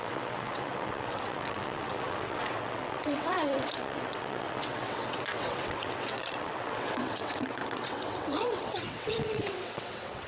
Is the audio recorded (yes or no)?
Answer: no